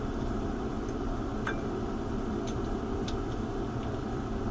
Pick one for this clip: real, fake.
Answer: fake